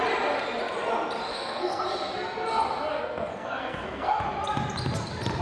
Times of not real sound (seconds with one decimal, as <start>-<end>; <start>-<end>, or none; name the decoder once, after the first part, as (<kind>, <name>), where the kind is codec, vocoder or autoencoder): 1.3-1.8 (codec, SNAC); 2.9-4.2